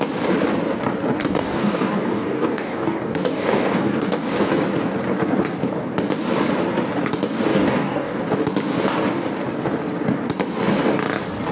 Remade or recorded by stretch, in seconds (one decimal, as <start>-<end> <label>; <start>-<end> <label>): 0.0-1.2 recorded; 1.2-4.4 remade; 4.4-7.5 recorded; 7.5-8.2 remade; 8.2-11.5 recorded